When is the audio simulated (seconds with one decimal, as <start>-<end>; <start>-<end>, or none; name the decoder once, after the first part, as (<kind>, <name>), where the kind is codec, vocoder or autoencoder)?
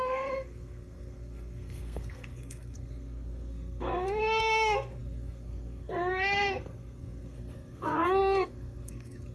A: 0.0-9.3 (codec, SNAC)